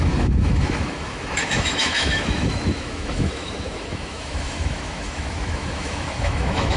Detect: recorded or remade remade